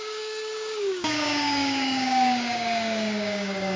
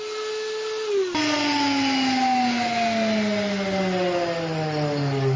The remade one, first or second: first